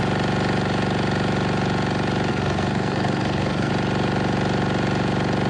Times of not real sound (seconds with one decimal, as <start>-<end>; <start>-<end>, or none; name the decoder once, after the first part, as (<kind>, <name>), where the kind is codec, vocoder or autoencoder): 2.3-3.7 (codec, SNAC)